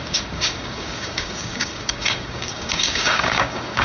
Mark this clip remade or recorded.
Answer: remade